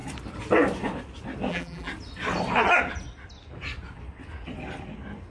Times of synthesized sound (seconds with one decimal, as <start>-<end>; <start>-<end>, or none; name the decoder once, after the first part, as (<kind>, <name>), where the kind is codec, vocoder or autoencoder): 1.5-1.9 (vocoder, BigVGAN v2)